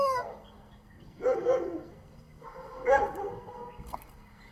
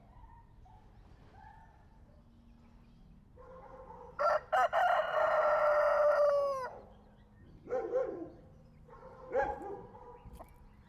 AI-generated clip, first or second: first